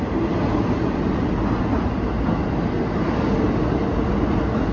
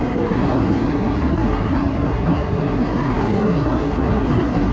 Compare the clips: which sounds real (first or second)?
first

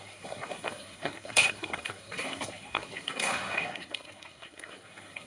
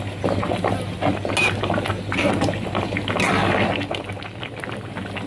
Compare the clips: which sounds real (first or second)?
second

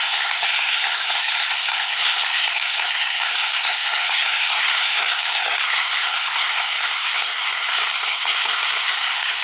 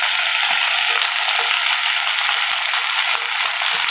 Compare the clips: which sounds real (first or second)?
second